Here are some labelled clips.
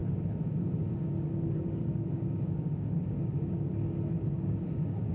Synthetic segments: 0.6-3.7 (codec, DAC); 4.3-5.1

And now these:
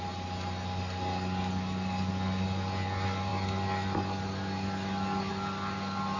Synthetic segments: none

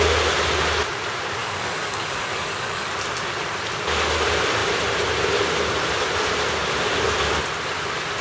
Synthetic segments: 1.4-2.9 (codec, DAC)